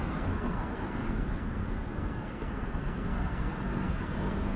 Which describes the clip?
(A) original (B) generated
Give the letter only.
B